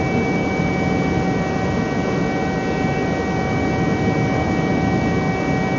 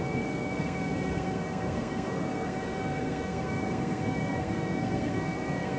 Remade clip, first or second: second